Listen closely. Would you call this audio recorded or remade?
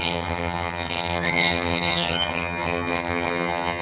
remade